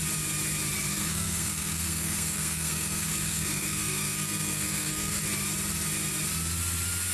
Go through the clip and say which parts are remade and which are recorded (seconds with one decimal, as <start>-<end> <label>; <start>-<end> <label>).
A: 0.0-0.9 recorded; 0.9-5.2 remade; 5.2-7.1 recorded